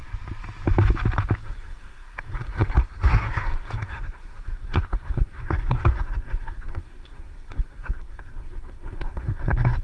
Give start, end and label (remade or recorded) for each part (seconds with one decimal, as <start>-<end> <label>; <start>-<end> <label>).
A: 0.0-1.4 recorded; 1.4-9.8 remade